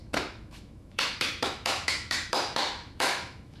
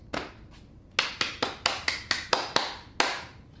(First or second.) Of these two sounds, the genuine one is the second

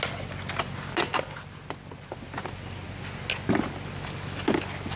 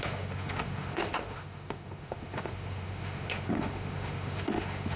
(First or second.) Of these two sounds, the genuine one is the first